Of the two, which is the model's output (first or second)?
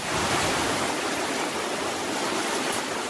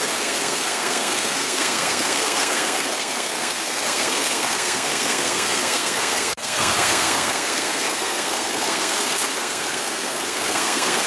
second